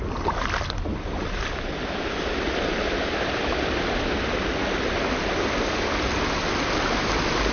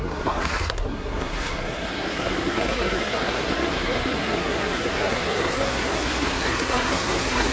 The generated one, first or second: second